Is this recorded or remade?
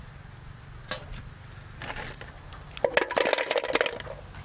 recorded